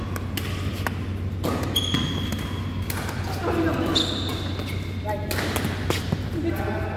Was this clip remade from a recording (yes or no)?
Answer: no